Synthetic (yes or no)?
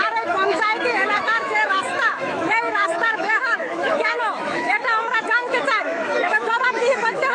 yes